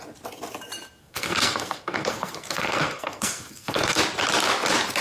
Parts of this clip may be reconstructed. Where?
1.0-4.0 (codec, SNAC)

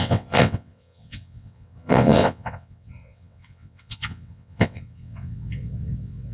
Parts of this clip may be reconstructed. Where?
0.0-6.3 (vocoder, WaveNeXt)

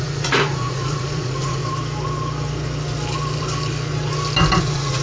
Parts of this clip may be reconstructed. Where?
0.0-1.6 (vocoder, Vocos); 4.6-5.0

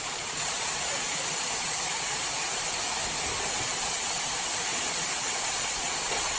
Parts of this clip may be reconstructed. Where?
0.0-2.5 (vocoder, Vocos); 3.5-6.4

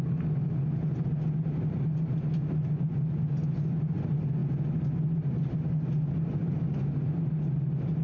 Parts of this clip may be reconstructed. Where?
none